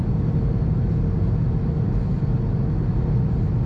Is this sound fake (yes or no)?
no